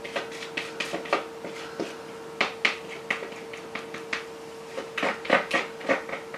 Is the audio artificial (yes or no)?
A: no